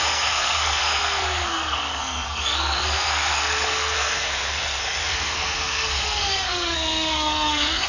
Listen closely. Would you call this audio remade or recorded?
remade